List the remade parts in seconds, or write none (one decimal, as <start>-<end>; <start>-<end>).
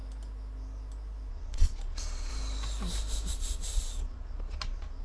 1.3-2.3; 3.3-5.0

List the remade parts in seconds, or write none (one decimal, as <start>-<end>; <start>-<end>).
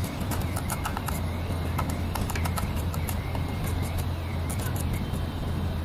0.0-4.3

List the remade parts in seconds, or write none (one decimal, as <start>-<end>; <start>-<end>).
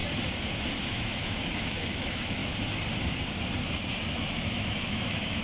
0.9-2.4; 4.1-5.4